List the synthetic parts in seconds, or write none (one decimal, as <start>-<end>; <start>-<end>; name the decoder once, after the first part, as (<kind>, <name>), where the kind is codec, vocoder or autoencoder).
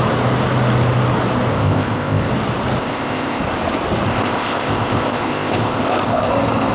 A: 1.5-2.3 (codec, ZipCodec); 2.8-3.4; 4.1-6.3